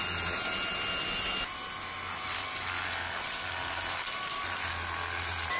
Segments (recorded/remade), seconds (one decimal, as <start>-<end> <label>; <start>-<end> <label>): 0.0-5.6 recorded